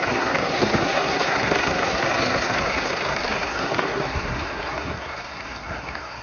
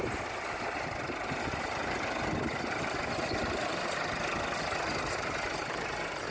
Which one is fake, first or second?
first